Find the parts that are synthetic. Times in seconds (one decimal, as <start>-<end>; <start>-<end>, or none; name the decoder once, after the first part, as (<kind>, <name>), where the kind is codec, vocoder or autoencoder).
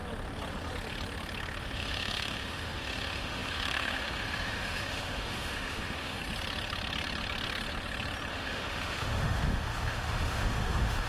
1.6-6.2 (autoencoder, DAC-VAE); 8.3-11.1